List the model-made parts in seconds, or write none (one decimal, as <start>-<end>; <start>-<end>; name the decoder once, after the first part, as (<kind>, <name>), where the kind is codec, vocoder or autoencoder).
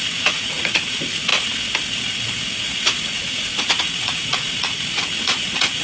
0.0-1.3 (vocoder, Vocos); 2.0-5.8